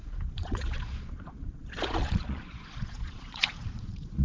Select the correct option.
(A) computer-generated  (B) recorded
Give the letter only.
A